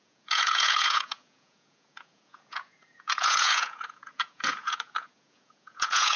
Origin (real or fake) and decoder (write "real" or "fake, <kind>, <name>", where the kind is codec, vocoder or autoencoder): fake, vocoder, Vocos